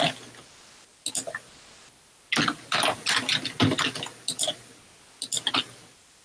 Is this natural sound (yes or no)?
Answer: yes